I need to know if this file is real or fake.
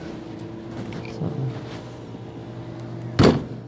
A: real